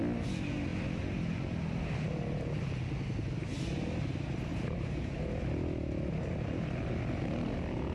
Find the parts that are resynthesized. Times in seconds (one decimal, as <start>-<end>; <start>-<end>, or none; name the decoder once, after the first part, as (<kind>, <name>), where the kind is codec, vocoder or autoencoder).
4.5-5.2 (vocoder, BigVGAN v2)